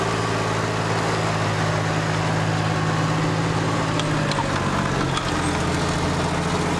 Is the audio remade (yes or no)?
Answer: no